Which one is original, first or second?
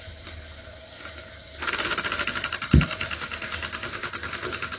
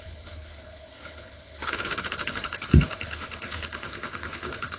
first